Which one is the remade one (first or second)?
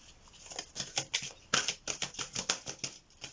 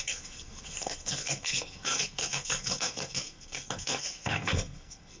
second